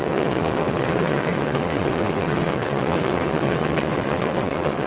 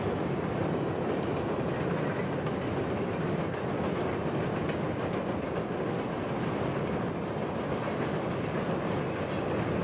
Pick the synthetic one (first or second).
first